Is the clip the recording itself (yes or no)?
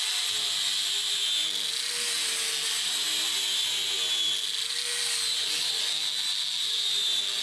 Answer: yes